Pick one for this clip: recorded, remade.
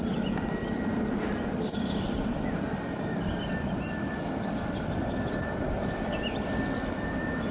remade